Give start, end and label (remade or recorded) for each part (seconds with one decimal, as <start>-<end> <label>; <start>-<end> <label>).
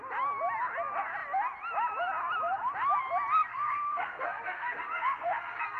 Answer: 0.0-3.4 recorded; 3.4-5.8 remade